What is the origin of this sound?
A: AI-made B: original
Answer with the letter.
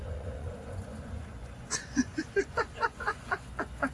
A